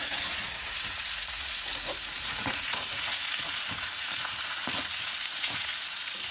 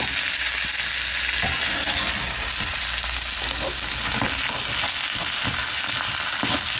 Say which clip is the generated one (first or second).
first